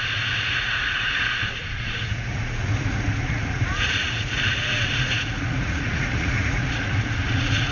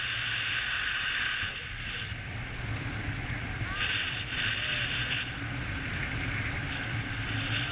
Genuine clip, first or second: second